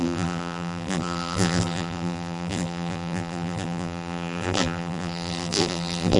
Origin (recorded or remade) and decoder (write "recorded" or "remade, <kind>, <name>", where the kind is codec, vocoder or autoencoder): remade, vocoder, BigVGAN v2